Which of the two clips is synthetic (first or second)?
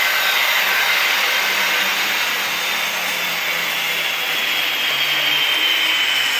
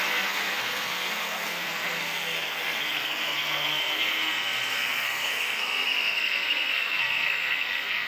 second